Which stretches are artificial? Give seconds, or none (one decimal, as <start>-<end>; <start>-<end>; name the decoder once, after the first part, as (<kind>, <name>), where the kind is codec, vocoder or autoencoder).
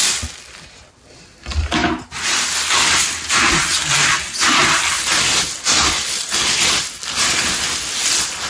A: 1.8-2.4 (vocoder, BigVGAN v2)